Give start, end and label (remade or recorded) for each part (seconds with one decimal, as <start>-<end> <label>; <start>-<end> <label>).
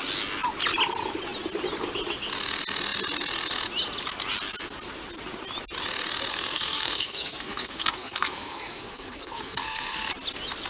0.0-6.3 recorded; 6.3-10.1 remade; 10.1-10.7 recorded